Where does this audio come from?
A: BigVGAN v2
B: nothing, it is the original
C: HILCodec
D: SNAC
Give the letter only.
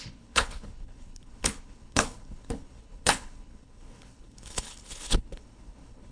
C